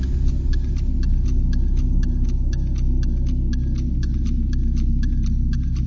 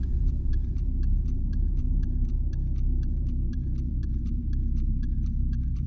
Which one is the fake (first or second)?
second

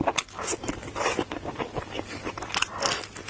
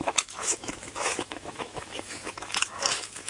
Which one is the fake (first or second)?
second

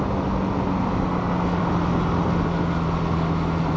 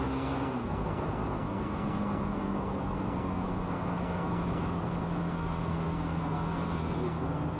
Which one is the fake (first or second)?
second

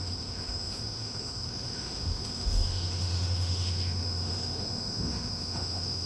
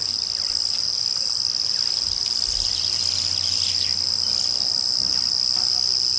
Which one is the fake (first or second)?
first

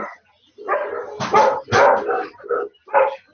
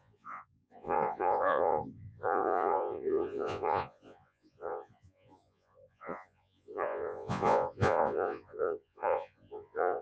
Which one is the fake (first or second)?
second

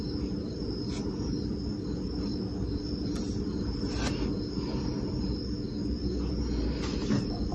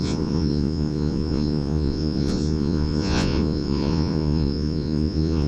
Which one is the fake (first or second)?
second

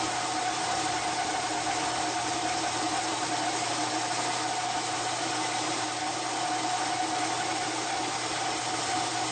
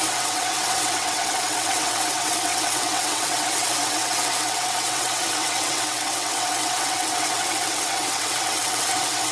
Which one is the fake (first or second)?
second